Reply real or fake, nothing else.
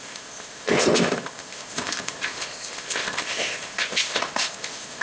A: fake